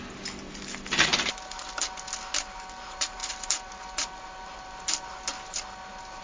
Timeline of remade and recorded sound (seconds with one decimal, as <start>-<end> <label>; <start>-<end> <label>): 0.0-6.2 recorded